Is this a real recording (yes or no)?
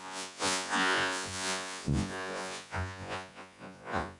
no